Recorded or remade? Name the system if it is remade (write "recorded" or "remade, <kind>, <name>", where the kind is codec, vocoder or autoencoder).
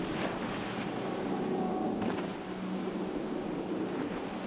recorded